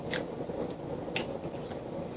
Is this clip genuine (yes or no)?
yes